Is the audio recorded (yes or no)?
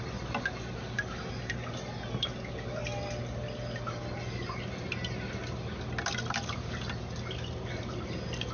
yes